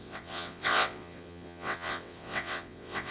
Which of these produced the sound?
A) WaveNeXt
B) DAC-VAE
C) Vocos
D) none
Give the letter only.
A